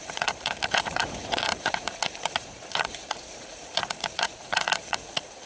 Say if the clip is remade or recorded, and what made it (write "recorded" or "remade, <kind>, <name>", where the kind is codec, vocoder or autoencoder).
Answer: remade, vocoder, Vocos